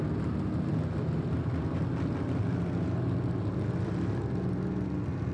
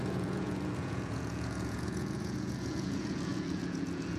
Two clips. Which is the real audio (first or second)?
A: first